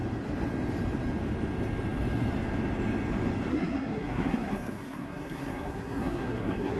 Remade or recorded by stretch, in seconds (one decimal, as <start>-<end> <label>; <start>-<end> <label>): 0.0-3.5 recorded; 3.5-6.8 remade